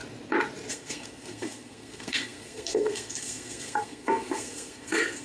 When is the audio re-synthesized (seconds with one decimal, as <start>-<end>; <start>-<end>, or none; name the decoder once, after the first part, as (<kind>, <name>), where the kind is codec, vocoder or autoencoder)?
0.7-5.2 (codec, SNAC)